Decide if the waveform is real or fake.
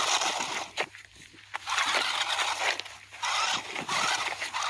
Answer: real